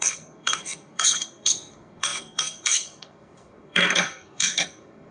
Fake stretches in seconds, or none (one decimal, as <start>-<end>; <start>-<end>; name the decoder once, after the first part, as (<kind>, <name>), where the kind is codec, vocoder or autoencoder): 0.0-5.1 (codec, SNAC)